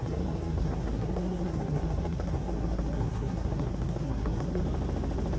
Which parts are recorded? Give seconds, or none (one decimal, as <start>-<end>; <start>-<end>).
4.6-5.4